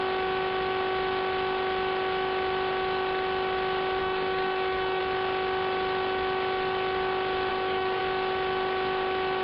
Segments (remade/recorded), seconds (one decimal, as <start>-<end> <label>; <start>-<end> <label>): 0.0-4.0 recorded; 4.0-5.0 remade; 5.0-7.5 recorded; 7.5-8.0 remade; 8.0-9.4 recorded